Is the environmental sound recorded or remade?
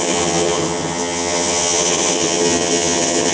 remade